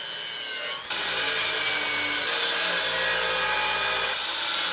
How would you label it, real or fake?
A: real